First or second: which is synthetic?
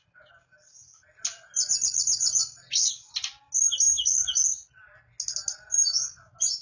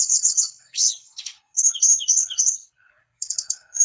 second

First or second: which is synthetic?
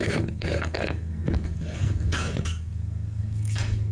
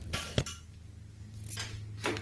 first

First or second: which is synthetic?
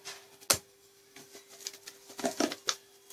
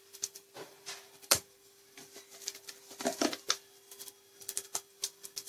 second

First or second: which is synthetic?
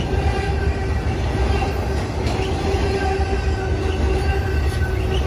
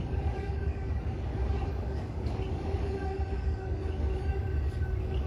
second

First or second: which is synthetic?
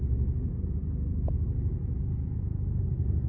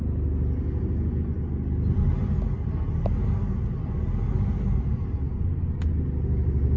first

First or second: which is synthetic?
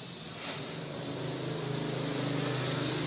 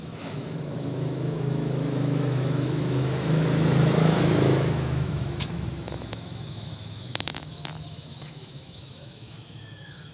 second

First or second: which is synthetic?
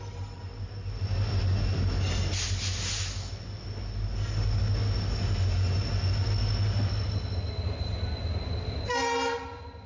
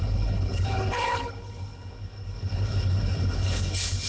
second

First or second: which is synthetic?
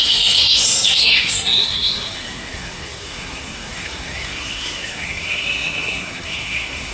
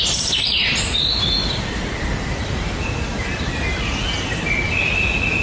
first